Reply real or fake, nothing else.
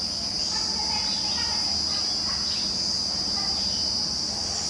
real